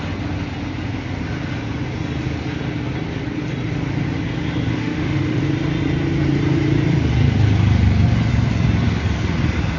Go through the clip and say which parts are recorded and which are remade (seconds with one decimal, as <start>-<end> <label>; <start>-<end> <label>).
0.0-4.8 recorded; 4.8-5.4 remade; 5.4-9.8 recorded